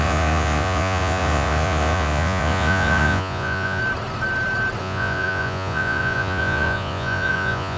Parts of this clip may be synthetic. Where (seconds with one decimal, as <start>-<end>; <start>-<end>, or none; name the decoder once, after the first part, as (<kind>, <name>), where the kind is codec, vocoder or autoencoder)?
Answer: 0.0-3.8 (vocoder, Vocos); 4.8-7.8